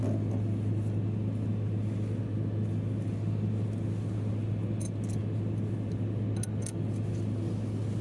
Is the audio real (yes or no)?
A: yes